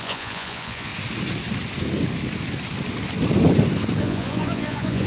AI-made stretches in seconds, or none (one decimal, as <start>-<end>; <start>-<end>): 0.0-0.9; 4.0-5.1